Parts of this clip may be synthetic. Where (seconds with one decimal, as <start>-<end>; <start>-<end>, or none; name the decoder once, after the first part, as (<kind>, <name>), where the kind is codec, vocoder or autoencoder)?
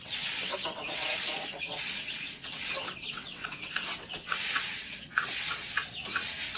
0.0-6.6 (vocoder, WaveNeXt)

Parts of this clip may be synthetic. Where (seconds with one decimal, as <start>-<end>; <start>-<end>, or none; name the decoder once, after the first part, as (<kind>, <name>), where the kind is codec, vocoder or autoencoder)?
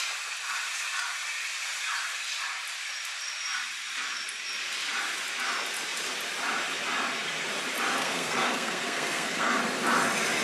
8.0-9.6 (codec, SNAC)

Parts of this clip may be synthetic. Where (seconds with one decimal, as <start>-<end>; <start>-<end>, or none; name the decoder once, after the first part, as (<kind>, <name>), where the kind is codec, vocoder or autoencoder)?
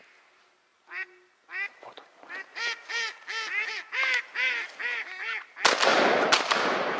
5.9-7.0 (vocoder, BigVGAN v2)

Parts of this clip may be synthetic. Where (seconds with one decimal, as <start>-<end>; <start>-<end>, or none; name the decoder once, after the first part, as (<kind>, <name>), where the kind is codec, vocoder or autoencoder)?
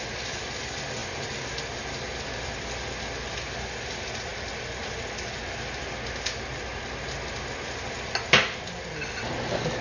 none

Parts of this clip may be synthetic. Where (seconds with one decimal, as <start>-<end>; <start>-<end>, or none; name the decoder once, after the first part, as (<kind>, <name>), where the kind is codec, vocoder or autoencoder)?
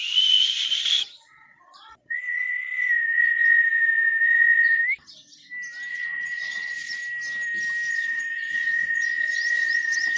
0.0-4.8 (vocoder, Vocos); 5.9-7.0; 7.9-10.2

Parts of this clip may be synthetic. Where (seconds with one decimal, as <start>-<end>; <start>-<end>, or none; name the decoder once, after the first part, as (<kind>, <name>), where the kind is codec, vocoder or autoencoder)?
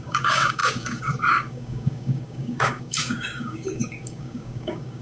0.0-5.0 (codec, DAC)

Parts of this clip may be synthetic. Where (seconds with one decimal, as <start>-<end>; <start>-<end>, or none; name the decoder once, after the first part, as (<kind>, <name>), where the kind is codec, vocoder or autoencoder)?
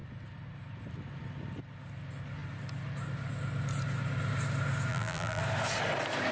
4.9-5.4 (vocoder, BigVGAN v2)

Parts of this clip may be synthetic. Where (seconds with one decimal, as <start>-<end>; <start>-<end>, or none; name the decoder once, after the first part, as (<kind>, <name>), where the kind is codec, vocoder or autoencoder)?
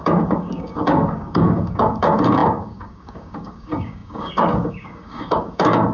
0.0-5.9 (codec, DAC)